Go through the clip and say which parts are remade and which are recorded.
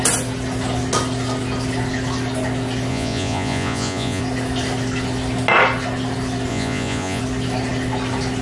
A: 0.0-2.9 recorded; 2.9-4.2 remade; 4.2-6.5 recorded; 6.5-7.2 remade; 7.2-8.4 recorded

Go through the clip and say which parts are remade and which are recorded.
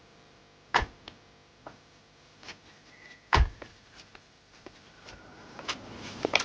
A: 0.0-0.4 remade; 0.4-3.7 recorded; 3.7-5.3 remade; 5.3-6.4 recorded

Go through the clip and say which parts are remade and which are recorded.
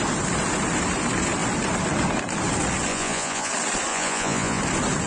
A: 0.0-2.9 recorded; 2.9-3.5 remade; 3.5-3.9 recorded; 3.9-4.6 remade; 4.6-5.1 recorded